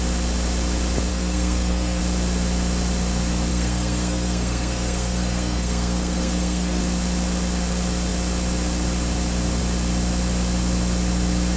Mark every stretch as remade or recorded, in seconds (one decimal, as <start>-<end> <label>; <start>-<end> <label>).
0.0-1.1 recorded; 1.1-2.0 remade; 2.0-3.5 recorded; 3.5-6.8 remade; 6.8-11.6 recorded